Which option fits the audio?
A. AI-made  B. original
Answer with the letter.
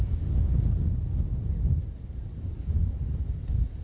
B